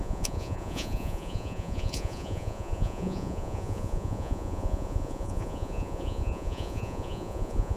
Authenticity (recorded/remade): remade